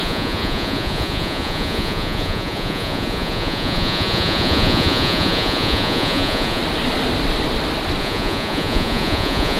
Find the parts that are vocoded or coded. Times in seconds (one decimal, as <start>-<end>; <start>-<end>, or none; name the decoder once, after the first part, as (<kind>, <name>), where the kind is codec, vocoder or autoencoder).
0.0-6.6 (vocoder, Vocos); 8.0-9.6

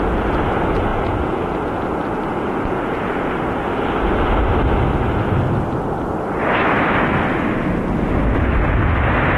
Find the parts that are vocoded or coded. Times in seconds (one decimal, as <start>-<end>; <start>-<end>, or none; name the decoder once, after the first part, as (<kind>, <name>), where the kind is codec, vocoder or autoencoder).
0.9-1.8 (vocoder, Vocos); 2.3-3.3

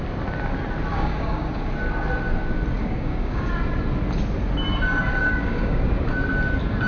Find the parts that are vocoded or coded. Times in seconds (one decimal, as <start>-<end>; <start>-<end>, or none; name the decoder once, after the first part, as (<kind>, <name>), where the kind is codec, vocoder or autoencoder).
0.9-1.7 (codec, DAC); 2.8-3.5; 5.2-6.1

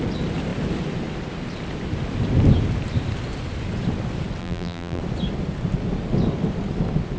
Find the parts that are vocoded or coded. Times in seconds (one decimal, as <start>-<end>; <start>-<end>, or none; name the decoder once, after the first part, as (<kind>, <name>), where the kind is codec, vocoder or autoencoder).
4.4-5.0 (vocoder, BigVGAN v2)

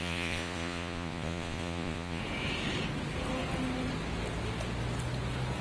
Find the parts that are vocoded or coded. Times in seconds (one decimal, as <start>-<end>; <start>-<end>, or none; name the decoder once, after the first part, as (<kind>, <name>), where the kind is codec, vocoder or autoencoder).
0.0-2.2 (vocoder, Vocos)

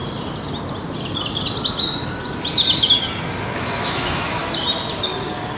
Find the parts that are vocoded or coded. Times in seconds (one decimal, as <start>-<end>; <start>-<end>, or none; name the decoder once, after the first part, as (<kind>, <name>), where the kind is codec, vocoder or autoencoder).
3.4-4.4 (autoencoder, DAC-VAE)

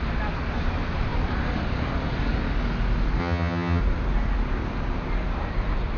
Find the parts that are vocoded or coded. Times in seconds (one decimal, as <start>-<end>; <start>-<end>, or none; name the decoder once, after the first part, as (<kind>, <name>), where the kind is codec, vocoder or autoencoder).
3.2-3.8 (vocoder, HiFi-GAN)

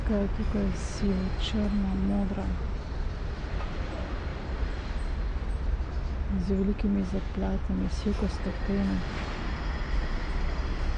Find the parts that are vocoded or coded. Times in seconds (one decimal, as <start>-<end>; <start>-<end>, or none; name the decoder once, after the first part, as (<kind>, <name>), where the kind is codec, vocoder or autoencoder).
4.3-4.9 (vocoder, BigVGAN v2)